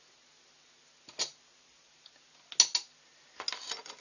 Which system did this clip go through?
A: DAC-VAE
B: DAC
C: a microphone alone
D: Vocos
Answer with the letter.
C